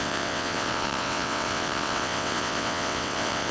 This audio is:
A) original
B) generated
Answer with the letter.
B